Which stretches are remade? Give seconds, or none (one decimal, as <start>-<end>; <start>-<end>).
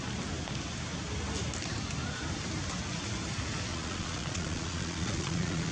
3.7-5.7